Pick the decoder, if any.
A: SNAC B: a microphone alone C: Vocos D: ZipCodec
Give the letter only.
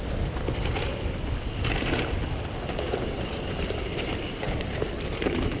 B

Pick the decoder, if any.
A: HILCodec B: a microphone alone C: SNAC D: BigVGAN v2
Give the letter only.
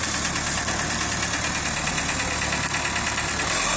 B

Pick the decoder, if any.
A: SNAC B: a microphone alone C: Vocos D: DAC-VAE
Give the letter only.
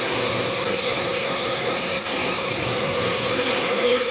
A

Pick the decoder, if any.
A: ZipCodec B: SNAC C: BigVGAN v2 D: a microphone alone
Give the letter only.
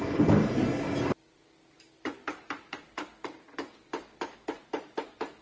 D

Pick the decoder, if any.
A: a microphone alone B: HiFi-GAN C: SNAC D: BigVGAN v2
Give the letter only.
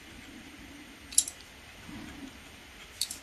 A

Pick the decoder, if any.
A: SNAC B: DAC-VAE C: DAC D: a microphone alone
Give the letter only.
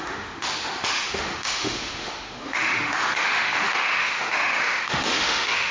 B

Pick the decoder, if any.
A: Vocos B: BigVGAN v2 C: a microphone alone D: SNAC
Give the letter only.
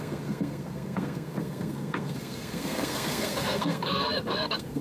D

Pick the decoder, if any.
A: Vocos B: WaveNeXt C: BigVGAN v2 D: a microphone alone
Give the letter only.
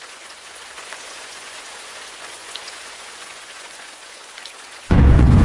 A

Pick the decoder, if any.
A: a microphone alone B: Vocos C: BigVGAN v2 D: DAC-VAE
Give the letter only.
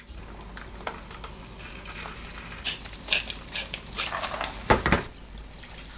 A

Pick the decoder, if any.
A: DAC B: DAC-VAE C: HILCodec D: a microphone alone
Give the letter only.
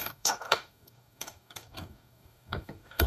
A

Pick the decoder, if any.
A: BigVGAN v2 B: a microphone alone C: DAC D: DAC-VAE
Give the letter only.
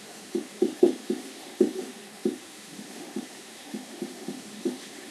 D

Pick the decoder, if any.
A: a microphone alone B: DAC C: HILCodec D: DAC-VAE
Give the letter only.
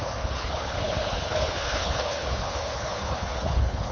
C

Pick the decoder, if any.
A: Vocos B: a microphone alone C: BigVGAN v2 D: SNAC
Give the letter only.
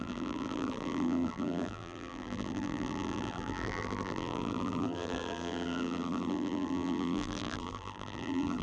C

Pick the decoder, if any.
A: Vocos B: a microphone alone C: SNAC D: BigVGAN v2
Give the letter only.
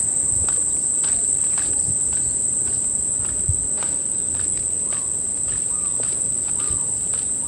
B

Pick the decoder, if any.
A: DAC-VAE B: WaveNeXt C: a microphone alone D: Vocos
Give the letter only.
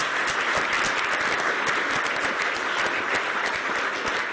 C